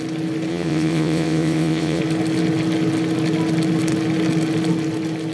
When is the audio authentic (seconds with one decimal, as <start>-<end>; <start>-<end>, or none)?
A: 0.0-0.5; 2.0-5.3